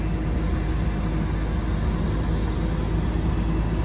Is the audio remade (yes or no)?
no